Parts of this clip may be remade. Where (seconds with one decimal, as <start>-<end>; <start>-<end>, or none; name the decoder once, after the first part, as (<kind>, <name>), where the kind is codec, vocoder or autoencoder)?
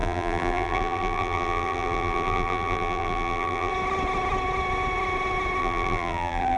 0.0-3.7 (vocoder, BigVGAN v2); 5.6-6.6